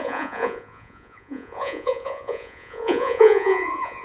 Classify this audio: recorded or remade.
remade